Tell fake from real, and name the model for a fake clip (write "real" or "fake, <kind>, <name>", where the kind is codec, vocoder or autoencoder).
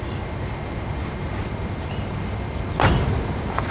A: real